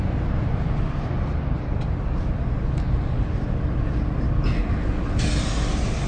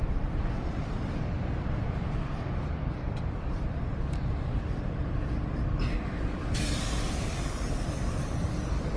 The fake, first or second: second